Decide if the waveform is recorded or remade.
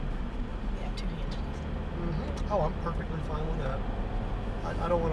recorded